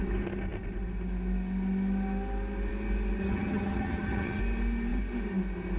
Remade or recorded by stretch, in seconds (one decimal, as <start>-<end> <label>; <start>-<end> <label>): 0.0-3.2 recorded; 3.2-4.4 remade; 4.4-5.8 recorded